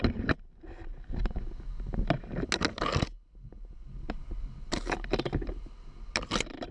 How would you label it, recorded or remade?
recorded